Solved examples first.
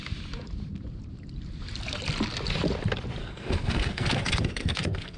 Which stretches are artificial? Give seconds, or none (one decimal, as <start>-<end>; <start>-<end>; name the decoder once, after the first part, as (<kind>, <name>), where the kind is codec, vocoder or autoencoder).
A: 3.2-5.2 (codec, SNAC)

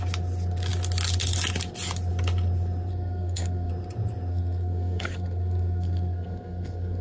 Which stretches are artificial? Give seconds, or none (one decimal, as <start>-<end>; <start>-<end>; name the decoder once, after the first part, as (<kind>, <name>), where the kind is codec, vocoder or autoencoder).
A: 2.9-3.7 (codec, SNAC); 4.3-7.0

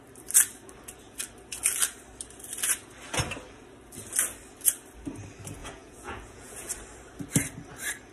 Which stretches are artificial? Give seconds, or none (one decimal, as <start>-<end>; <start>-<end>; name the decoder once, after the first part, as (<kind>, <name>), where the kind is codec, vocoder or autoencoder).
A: 5.6-6.7 (vocoder, Vocos)